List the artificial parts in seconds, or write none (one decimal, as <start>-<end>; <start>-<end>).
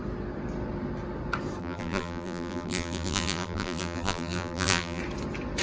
1.6-5.0